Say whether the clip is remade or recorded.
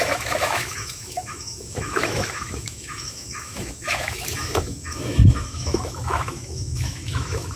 remade